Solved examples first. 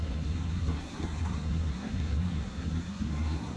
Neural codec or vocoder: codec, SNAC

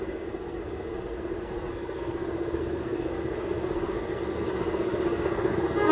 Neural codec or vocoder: codec, SNAC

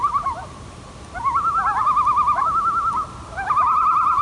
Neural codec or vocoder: none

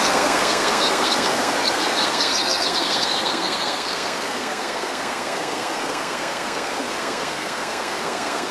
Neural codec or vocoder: codec, SNAC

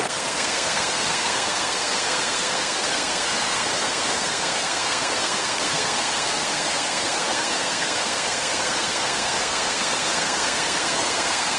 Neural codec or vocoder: codec, SNAC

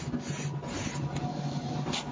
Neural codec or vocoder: none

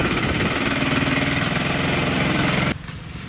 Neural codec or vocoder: none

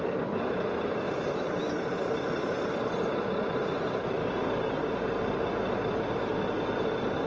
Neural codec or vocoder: none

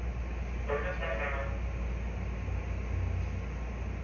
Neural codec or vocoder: none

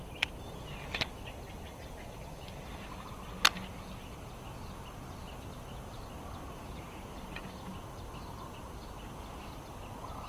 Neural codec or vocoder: none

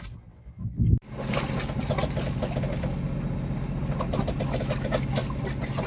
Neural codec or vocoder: none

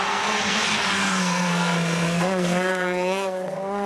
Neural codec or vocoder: codec, SNAC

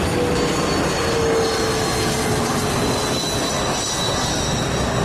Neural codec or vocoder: none